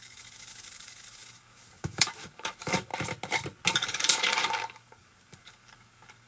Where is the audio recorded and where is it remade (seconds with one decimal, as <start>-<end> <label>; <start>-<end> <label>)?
0.0-2.9 remade; 2.9-3.7 recorded; 3.7-6.3 remade